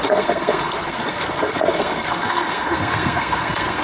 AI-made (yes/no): yes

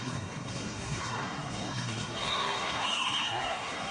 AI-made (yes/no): yes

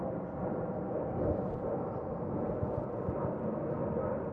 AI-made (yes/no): no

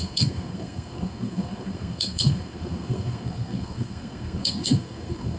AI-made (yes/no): yes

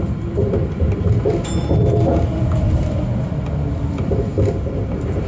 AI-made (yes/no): no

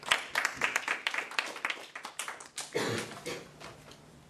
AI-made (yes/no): no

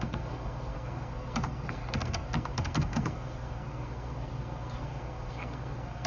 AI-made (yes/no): yes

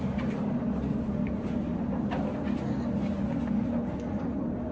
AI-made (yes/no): no